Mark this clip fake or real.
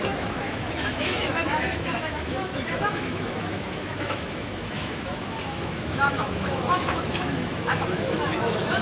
fake